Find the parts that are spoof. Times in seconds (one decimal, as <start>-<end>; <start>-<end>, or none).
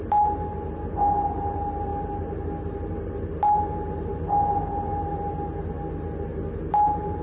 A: none